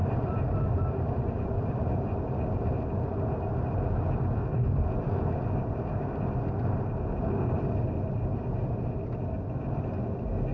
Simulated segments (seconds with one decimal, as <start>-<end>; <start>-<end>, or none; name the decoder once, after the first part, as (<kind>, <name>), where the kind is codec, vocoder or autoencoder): 0.0-1.6 (vocoder, BigVGAN v2)